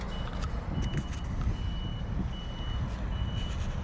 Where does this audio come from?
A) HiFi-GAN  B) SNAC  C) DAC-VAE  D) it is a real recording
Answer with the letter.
D